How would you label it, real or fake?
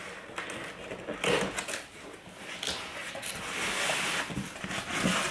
real